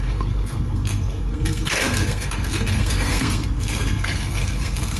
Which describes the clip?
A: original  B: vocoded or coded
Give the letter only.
B